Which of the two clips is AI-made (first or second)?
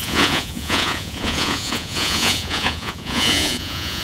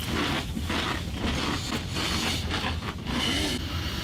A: first